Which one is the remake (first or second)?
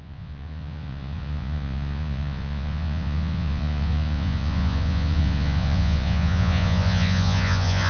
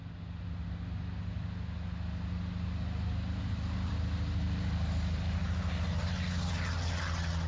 first